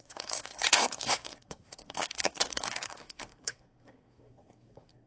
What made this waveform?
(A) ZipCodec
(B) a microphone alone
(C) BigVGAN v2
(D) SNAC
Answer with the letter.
D